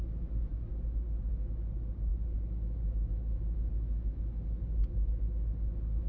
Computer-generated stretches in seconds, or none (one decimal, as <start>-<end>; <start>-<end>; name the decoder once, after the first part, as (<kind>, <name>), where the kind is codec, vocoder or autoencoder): none